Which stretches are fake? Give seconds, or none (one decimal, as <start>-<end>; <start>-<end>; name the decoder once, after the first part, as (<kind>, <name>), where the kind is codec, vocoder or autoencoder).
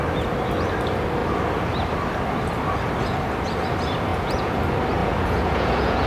4.1-4.6 (vocoder, Vocos); 5.0-6.1